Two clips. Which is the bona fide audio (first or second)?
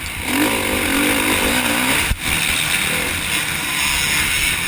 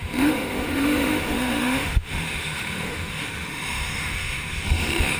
first